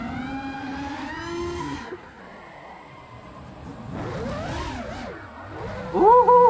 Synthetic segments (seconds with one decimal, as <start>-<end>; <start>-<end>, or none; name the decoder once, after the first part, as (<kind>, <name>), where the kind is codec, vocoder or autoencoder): 1.6-2.2 (codec, SNAC)